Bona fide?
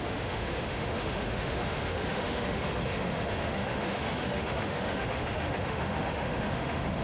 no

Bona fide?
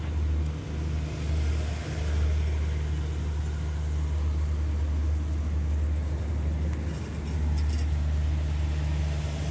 yes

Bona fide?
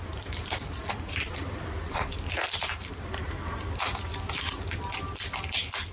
yes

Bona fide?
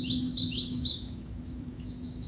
no